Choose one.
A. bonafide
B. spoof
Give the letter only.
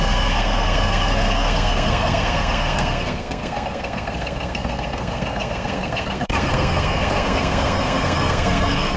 B